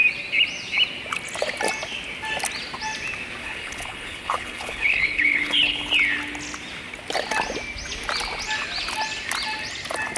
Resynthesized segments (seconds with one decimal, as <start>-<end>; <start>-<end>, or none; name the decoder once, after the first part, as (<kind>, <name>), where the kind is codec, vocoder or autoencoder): 3.4-5.9 (codec, HILCodec)